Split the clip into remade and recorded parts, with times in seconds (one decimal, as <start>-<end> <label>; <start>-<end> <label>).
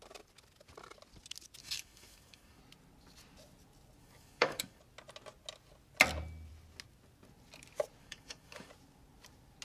0.0-1.6 recorded; 1.6-2.6 remade; 2.6-4.0 recorded; 4.0-4.8 remade; 4.8-8.0 recorded; 8.0-8.7 remade; 8.7-9.6 recorded